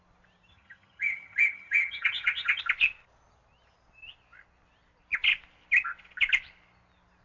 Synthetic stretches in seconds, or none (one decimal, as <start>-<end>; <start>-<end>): 0.5-2.6